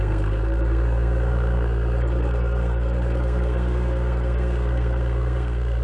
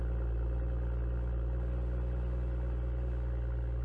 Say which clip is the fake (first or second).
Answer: first